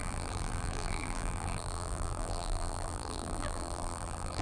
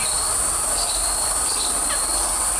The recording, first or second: second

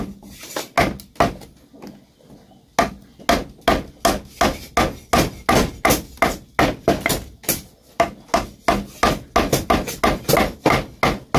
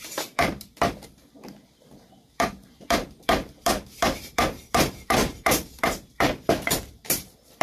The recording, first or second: first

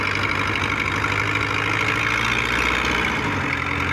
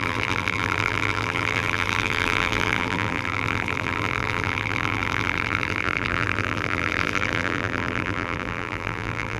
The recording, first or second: first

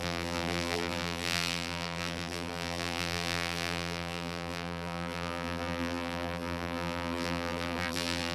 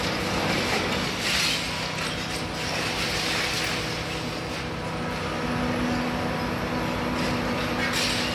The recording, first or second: second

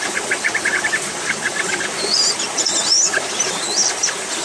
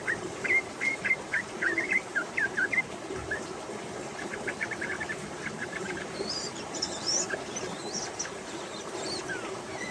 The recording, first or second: first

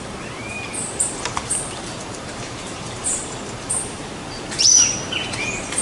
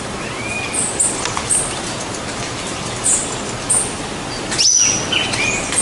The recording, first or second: second